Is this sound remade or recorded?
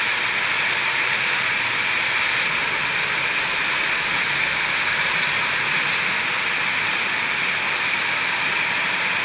recorded